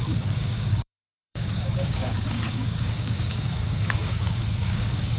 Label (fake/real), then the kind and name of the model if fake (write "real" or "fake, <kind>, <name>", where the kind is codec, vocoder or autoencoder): fake, codec, DAC